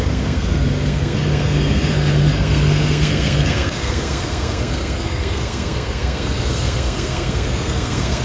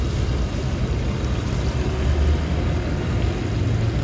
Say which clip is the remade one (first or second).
first